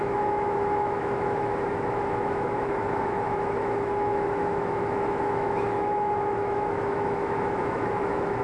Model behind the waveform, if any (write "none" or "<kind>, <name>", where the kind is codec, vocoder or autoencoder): autoencoder, DAC-VAE